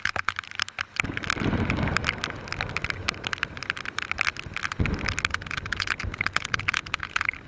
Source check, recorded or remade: recorded